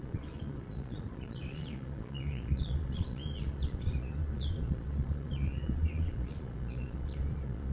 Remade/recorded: remade